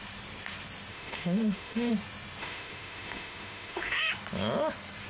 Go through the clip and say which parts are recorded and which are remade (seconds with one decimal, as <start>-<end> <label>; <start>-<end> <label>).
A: 0.0-0.9 recorded; 0.9-1.9 remade; 1.9-2.4 recorded; 2.4-4.1 remade; 4.1-5.1 recorded